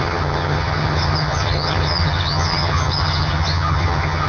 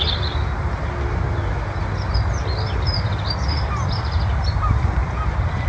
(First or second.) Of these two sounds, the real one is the second